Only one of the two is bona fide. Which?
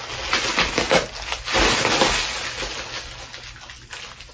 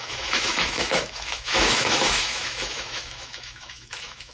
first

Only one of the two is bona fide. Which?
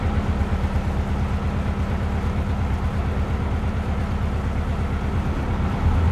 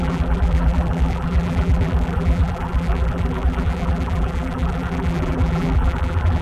first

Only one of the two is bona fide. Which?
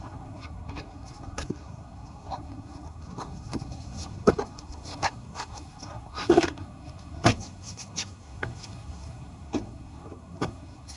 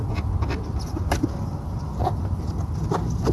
second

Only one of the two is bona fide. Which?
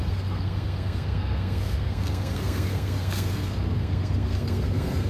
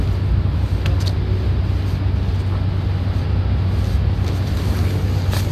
second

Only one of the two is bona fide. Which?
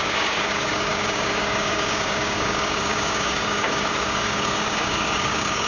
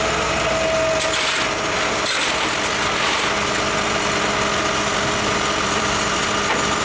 second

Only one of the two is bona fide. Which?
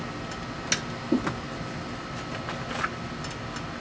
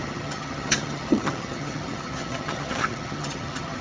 first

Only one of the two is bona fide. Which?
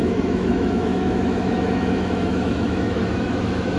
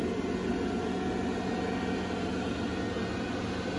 second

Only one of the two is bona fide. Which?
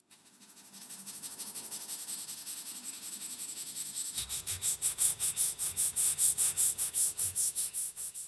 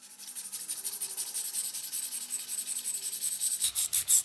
second